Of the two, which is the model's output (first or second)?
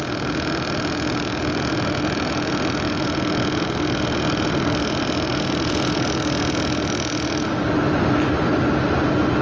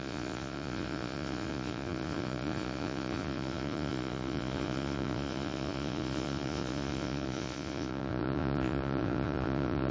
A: second